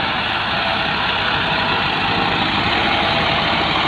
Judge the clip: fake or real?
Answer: real